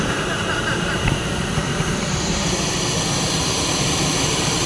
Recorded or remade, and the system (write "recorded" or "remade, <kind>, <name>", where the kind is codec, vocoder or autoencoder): remade, vocoder, BigVGAN v2